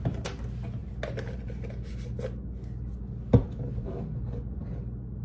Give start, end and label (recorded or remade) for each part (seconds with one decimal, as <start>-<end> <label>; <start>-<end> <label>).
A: 0.0-5.2 recorded